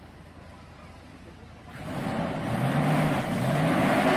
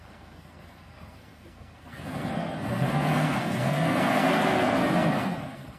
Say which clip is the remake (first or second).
second